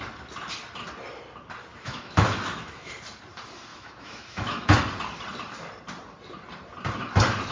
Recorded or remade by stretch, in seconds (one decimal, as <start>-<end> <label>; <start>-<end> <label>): 0.0-1.7 recorded; 1.7-2.9 remade; 2.9-3.7 recorded; 3.7-4.8 remade; 4.8-7.5 recorded